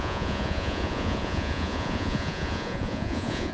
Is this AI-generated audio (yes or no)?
yes